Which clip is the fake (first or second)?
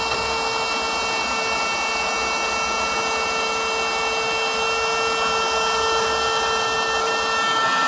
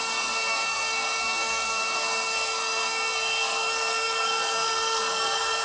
second